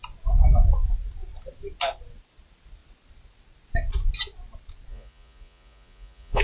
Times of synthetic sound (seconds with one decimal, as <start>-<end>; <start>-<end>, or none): 4.9-6.4